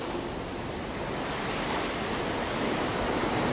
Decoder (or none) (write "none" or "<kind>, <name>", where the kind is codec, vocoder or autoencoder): none